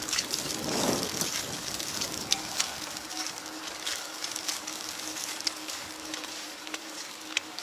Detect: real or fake fake